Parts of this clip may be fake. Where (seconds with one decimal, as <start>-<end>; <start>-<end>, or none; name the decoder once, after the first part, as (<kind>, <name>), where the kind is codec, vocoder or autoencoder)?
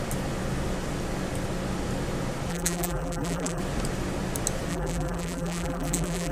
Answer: 2.5-3.6 (vocoder, BigVGAN v2); 4.7-6.3